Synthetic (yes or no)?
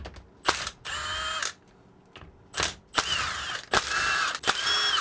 no